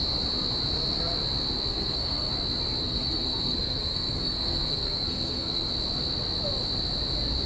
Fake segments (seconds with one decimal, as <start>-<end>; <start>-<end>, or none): 1.7-2.3; 2.8-5.7